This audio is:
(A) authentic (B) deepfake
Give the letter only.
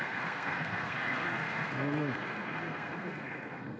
B